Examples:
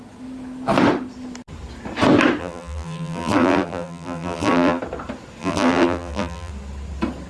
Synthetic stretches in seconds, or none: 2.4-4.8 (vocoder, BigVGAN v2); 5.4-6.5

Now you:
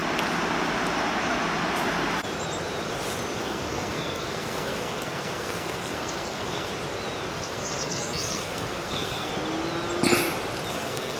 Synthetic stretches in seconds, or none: 3.4-6.7 (codec, SNAC); 7.3-9.3; 10.7-11.2

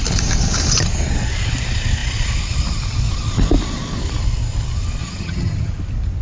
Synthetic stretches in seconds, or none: 5.0-5.7 (vocoder, HiFi-GAN)

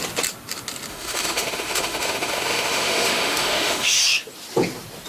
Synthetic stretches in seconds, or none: 0.9-4.0 (autoencoder, DAC-VAE)